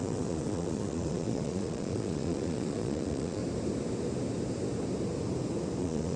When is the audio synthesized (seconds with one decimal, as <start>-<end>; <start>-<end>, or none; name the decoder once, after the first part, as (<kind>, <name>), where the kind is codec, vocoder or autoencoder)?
0.0-3.4 (vocoder, Vocos); 5.8-6.2